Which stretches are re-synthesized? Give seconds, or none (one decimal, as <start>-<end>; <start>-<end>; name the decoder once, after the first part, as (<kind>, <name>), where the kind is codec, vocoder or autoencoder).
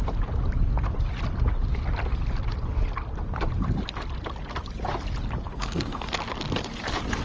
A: 5.5-6.1 (codec, SNAC)